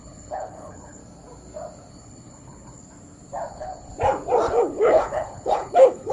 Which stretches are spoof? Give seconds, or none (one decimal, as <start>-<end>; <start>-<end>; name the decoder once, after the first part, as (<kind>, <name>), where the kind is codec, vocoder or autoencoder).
0.0-1.0 (codec, HILCodec); 1.9-2.8; 3.5-3.9; 4.5-6.1